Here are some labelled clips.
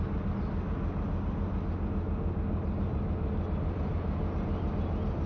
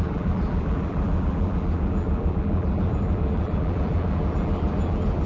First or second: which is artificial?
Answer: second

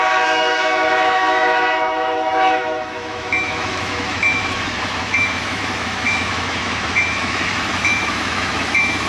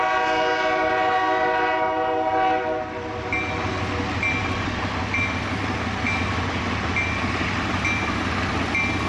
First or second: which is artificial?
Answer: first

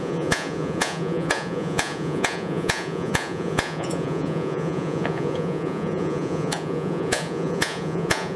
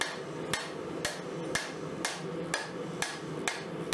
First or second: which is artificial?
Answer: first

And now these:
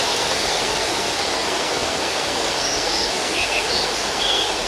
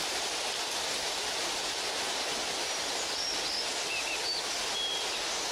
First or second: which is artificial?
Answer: first